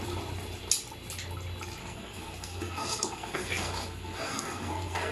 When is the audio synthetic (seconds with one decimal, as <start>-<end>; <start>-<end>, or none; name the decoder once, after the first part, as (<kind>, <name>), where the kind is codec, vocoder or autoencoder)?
1.8-5.1 (codec, SNAC)